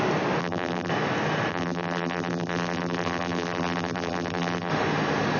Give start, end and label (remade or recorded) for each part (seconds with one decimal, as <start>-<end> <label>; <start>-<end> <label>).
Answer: 0.0-0.4 recorded; 0.4-0.9 remade; 0.9-1.5 recorded; 1.5-4.7 remade; 4.7-5.4 recorded